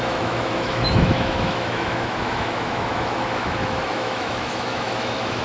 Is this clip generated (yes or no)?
yes